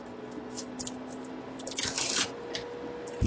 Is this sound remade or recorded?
recorded